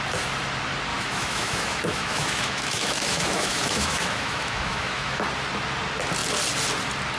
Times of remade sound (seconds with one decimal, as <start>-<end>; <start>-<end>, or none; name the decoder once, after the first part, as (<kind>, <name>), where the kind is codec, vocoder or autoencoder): 0.9-5.2 (autoencoder, DAC-VAE)